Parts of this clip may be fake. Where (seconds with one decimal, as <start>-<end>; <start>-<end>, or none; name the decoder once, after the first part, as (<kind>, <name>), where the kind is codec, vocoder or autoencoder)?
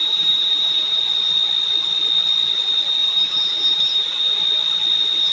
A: 0.0-1.0 (vocoder, BigVGAN v2); 3.0-4.1